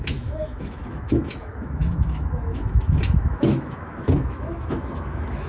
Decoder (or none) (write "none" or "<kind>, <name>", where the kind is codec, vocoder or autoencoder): autoencoder, DAC-VAE